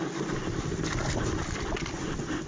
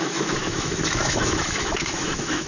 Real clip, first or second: first